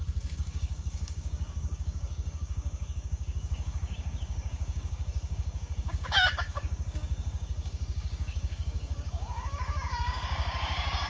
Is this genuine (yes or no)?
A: no